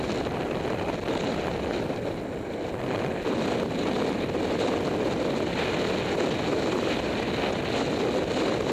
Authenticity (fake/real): real